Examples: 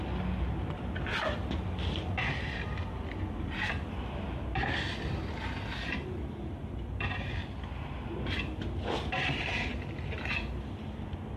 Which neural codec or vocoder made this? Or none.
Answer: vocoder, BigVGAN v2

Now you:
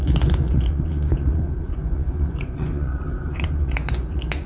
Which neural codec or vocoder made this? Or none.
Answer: vocoder, Vocos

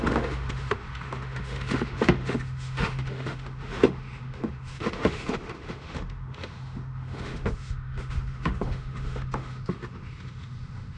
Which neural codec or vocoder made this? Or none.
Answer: autoencoder, DAC-VAE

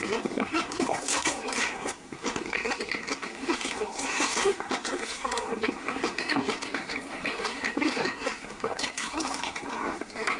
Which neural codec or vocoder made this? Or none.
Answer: codec, SNAC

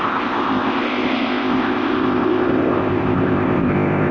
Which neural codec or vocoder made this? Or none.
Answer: codec, ZipCodec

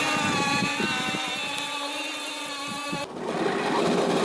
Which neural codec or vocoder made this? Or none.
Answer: none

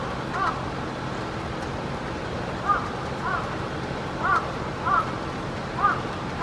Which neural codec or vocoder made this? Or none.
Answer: none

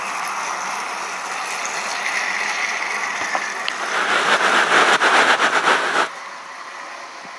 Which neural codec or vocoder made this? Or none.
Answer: none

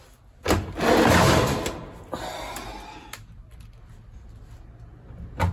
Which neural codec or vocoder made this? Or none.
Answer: none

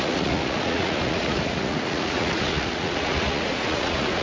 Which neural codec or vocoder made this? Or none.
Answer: vocoder, Vocos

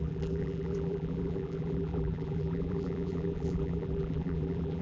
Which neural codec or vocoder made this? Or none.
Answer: vocoder, BigVGAN v2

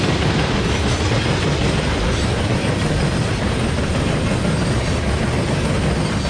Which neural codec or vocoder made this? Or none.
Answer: none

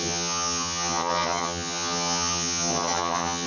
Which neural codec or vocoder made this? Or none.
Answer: vocoder, HiFi-GAN